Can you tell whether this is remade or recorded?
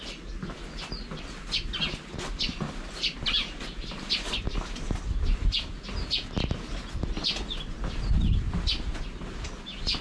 recorded